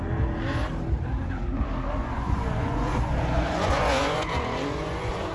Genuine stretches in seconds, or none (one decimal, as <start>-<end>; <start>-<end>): 0.0-2.0